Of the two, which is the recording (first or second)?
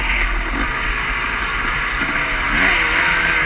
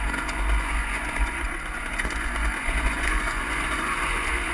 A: first